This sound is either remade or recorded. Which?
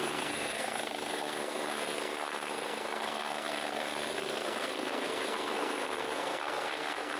remade